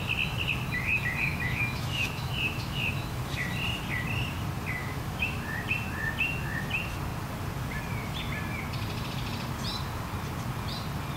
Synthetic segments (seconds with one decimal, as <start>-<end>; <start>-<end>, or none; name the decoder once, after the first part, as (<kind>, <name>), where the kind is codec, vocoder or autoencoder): 1.3-3.2 (autoencoder, DAC-VAE); 4.8-5.4